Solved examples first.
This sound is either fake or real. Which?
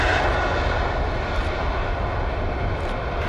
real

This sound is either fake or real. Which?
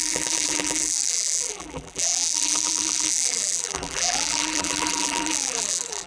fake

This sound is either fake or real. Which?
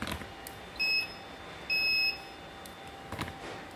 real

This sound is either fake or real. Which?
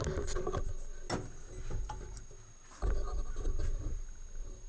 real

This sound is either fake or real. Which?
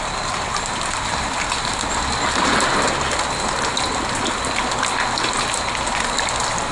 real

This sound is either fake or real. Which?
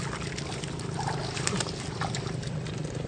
real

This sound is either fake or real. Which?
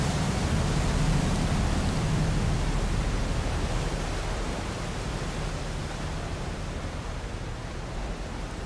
real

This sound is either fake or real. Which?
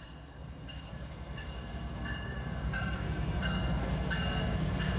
fake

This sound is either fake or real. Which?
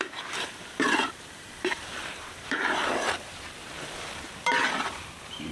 fake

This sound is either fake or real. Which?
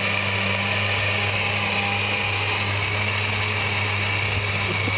real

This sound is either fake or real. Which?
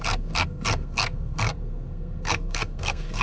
fake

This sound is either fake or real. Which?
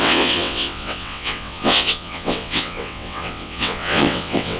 fake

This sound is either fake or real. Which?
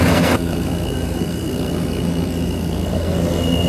fake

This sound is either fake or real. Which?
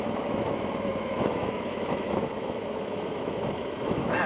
fake